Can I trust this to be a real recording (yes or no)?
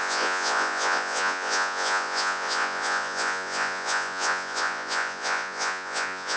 no